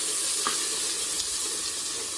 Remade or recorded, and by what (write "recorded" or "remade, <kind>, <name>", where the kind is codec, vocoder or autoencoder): recorded